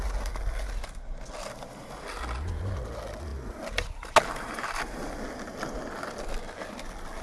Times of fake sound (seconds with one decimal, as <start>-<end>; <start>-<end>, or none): none